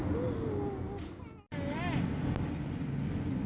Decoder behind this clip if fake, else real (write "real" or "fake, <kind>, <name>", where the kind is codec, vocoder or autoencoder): real